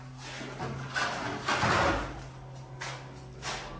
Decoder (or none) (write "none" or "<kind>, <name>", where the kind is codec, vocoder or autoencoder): none